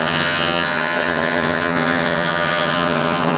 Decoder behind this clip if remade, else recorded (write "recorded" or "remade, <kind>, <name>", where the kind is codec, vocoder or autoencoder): remade, vocoder, HiFi-GAN